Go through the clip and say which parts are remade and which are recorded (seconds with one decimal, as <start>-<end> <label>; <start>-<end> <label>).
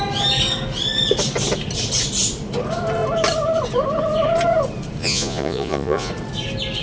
0.0-5.0 recorded; 5.0-6.1 remade; 6.1-6.8 recorded